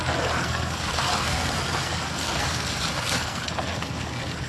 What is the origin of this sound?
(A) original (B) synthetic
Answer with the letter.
B